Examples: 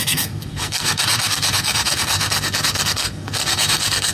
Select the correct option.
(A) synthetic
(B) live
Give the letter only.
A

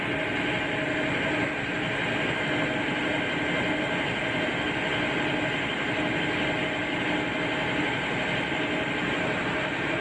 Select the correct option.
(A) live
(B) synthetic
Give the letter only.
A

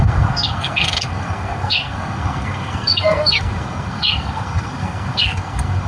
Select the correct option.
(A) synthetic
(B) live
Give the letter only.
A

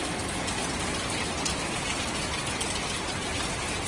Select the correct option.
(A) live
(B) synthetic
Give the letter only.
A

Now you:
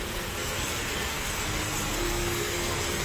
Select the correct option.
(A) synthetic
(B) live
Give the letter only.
A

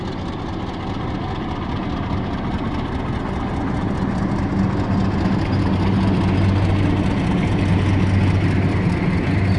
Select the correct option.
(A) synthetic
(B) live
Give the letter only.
B